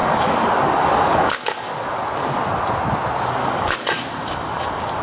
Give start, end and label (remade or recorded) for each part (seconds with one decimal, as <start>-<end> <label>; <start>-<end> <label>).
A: 0.0-2.0 remade; 2.0-3.4 recorded; 3.4-5.0 remade